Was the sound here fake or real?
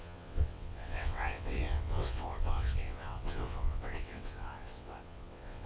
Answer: fake